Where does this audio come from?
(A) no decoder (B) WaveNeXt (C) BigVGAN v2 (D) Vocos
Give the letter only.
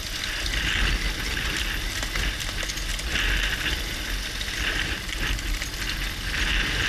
A